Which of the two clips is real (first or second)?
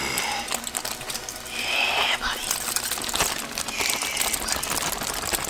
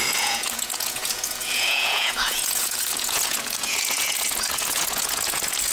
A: first